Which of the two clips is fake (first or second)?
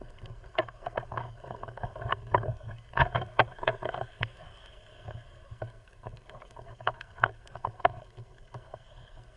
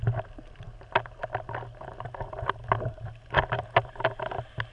first